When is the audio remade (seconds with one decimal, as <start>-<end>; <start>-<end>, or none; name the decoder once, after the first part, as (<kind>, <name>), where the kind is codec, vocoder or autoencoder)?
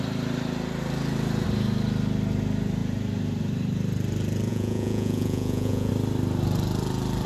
4.5-5.9 (vocoder, Vocos)